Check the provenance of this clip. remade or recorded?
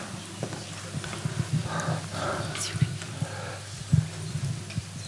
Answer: recorded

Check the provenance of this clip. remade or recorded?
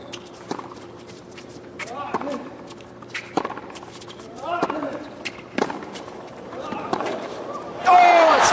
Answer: remade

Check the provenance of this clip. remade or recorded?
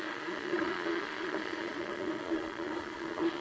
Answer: remade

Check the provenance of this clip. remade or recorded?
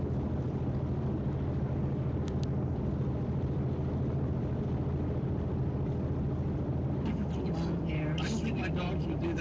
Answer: recorded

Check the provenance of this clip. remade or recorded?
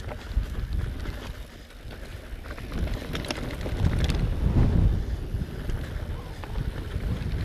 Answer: recorded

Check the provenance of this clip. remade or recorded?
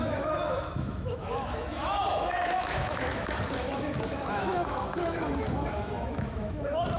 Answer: remade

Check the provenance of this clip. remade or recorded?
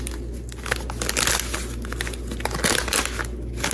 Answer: recorded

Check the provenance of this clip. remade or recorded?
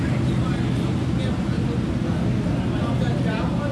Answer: recorded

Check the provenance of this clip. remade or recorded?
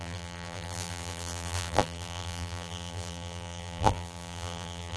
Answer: remade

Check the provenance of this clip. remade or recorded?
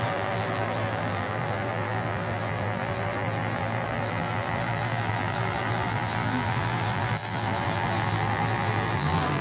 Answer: remade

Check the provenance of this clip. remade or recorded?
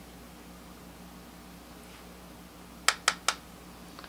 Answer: recorded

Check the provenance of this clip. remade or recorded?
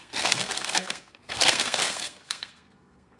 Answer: remade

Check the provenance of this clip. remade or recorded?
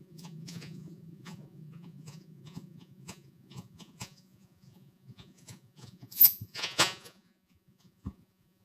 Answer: remade